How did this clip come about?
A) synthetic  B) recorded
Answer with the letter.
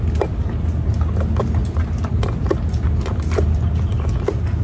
B